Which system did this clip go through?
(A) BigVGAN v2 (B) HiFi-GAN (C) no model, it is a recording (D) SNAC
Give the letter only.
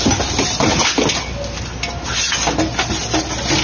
C